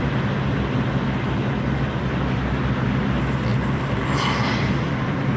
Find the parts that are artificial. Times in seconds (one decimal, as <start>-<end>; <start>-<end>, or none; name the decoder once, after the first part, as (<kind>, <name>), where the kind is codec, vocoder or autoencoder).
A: 3.5-5.4 (vocoder, BigVGAN v2)